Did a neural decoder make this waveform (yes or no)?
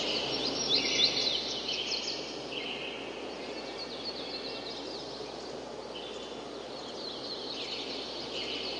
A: no